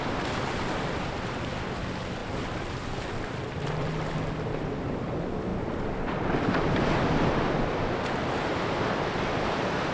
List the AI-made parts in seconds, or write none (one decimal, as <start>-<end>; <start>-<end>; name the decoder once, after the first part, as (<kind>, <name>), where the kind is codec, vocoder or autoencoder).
none